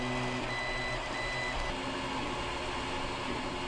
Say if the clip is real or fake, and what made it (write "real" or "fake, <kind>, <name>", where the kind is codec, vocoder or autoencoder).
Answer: real